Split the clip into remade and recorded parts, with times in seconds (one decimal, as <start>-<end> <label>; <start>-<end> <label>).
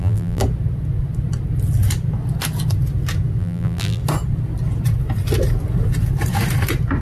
0.0-0.4 remade; 0.4-3.4 recorded; 3.4-4.0 remade; 4.0-7.0 recorded